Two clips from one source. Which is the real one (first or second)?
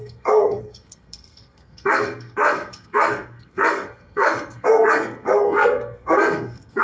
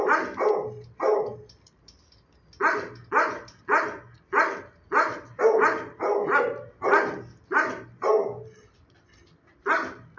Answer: second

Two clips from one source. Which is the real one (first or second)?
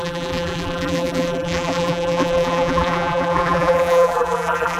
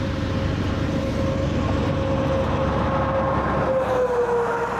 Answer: second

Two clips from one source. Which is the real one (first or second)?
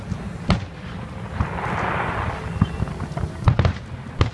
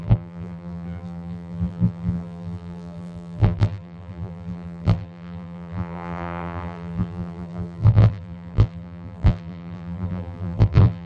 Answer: first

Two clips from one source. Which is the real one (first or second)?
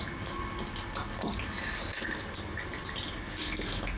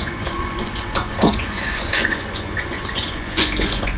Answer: first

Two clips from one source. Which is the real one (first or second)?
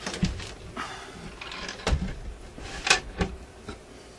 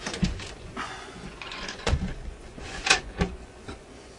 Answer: first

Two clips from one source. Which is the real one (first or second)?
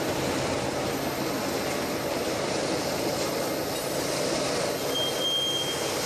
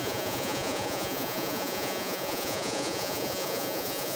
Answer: first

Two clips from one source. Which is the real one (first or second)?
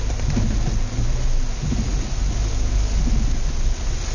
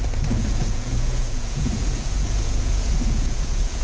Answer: first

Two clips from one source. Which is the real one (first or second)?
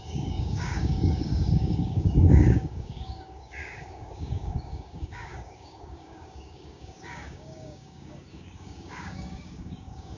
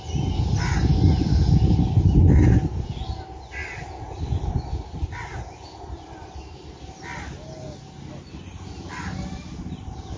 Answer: second